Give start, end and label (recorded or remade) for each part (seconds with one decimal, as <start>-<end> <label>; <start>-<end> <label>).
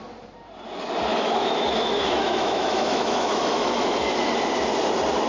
0.0-1.1 recorded; 1.1-4.3 remade; 4.3-5.3 recorded